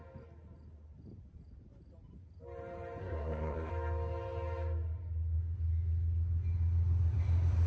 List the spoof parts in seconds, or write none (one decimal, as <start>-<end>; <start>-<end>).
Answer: 3.0-3.7